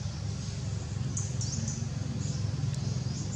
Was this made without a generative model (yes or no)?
yes